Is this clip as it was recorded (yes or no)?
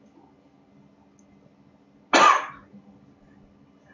yes